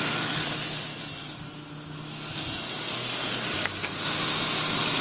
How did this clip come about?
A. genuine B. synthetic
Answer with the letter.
A